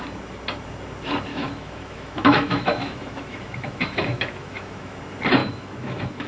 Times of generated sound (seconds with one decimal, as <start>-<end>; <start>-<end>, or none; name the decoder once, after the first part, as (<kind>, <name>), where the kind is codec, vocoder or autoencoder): 1.3-5.0 (autoencoder, DAC-VAE); 5.4-6.3